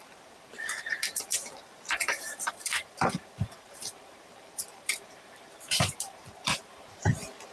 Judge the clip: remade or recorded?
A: remade